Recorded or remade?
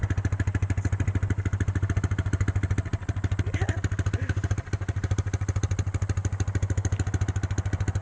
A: recorded